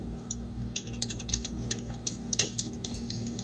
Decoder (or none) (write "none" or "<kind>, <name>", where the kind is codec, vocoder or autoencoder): codec, DAC